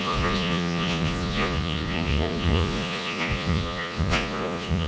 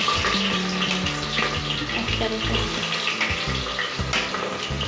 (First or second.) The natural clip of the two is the second